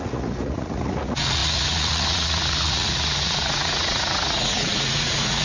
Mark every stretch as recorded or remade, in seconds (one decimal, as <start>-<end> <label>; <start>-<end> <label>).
0.0-5.4 remade